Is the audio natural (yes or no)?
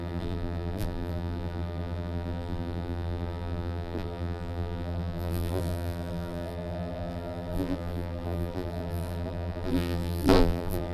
no